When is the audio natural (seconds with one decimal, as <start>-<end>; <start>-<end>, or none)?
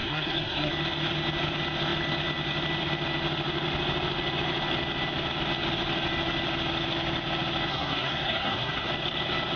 0.7-7.7; 8.9-9.6